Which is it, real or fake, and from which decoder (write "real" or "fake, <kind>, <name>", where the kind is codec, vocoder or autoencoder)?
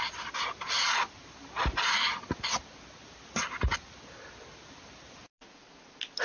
real